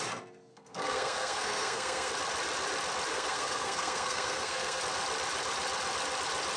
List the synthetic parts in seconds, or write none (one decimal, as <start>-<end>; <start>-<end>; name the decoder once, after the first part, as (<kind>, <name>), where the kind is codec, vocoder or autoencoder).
0.5-2.1 (codec, SNAC); 3.1-4.8